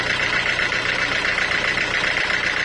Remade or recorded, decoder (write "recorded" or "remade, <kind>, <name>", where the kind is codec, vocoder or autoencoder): recorded